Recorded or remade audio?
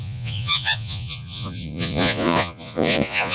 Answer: remade